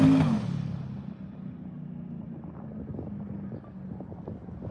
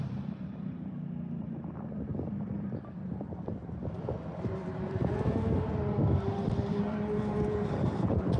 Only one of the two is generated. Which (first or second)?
second